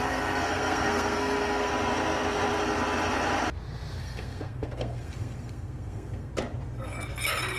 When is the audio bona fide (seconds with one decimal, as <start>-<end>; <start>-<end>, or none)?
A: 1.7-4.0; 6.3-7.6